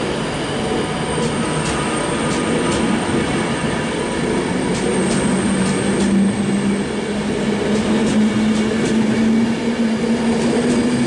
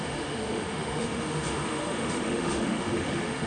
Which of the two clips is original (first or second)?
first